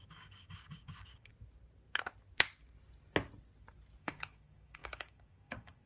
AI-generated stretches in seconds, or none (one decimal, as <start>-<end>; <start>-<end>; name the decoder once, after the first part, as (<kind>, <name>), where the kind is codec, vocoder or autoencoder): 0.0-1.3 (codec, DAC); 4.0-5.9